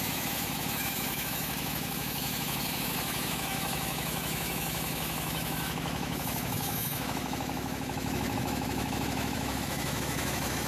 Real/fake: fake